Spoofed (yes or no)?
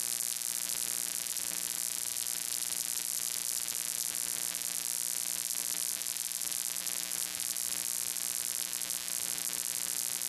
no